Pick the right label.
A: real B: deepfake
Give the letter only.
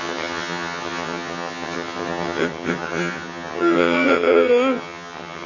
B